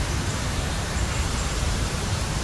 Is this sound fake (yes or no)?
yes